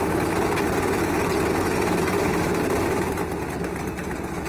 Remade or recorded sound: recorded